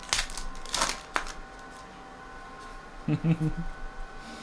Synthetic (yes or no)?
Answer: no